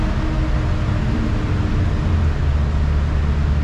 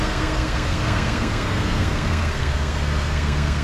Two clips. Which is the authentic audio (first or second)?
first